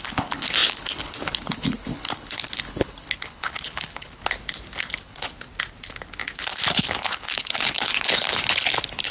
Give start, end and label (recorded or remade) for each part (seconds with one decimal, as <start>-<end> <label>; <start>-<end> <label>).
0.0-4.2 remade; 4.2-4.8 recorded; 4.8-5.3 remade; 5.3-6.7 recorded; 6.7-9.1 remade